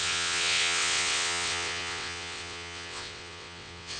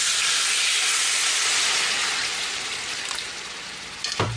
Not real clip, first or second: first